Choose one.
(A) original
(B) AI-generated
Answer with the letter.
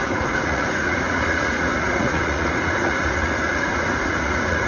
B